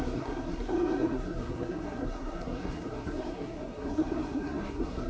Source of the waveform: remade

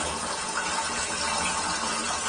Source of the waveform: remade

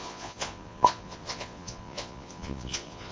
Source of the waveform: remade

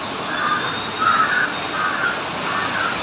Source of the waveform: recorded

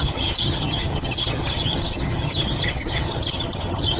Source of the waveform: remade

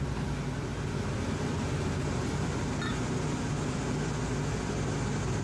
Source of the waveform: recorded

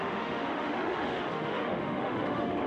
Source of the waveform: remade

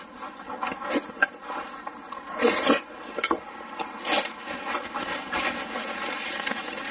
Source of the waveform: recorded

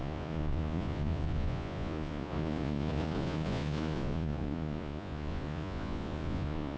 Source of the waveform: remade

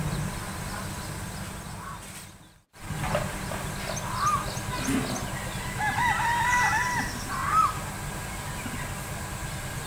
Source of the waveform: recorded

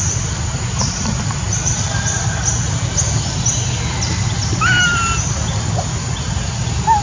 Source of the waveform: recorded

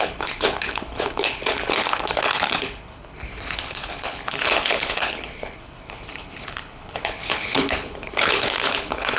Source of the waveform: remade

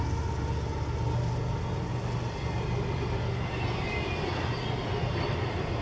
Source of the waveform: recorded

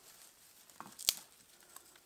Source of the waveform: recorded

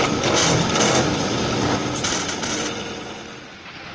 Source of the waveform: recorded